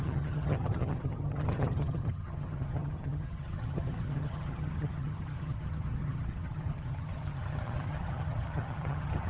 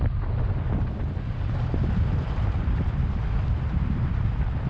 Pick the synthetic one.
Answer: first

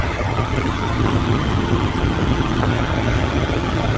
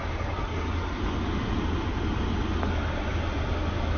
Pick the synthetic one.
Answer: first